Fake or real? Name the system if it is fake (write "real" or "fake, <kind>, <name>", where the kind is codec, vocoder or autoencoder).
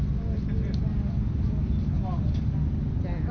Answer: real